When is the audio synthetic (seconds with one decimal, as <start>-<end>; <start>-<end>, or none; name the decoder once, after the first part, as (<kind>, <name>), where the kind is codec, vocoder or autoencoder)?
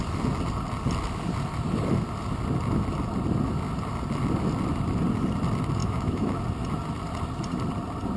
5.8-6.4 (autoencoder, DAC-VAE)